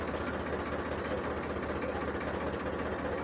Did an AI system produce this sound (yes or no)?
no